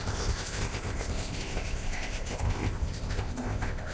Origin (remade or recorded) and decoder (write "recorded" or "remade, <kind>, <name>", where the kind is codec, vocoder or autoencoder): remade, codec, ZipCodec